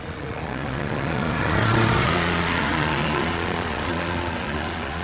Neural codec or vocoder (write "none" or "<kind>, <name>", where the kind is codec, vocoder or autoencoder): vocoder, Vocos